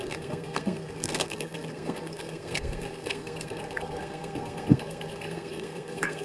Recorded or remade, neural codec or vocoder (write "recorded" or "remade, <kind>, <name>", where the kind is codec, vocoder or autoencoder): remade, codec, SNAC